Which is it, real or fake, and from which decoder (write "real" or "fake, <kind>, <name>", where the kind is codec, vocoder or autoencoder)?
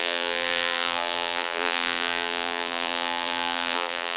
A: fake, vocoder, BigVGAN v2